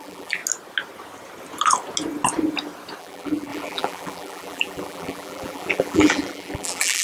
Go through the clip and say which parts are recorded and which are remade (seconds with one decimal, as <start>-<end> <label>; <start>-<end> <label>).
0.0-0.4 remade; 0.4-3.0 recorded; 3.0-7.0 remade